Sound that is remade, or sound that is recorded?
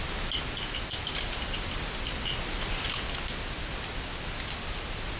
recorded